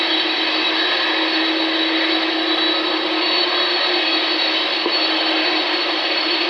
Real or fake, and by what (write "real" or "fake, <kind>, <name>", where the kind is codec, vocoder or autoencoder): real